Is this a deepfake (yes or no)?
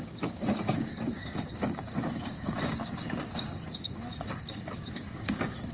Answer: yes